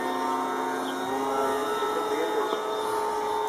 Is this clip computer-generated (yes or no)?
no